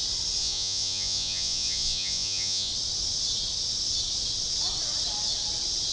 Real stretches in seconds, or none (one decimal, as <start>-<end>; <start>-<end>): 0.0-0.4; 2.7-5.9